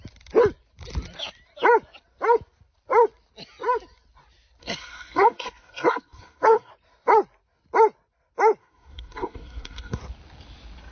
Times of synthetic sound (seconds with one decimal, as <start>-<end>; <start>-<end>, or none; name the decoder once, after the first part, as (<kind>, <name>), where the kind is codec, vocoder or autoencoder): 4.6-6.7 (codec, SNAC); 8.6-10.0